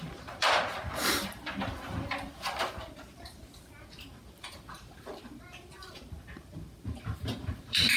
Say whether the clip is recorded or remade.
remade